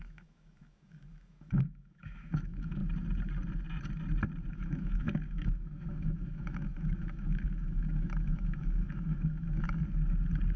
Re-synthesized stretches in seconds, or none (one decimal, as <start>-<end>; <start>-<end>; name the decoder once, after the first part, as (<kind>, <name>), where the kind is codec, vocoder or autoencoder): 0.0-2.8 (autoencoder, DAC-VAE); 4.5-9.8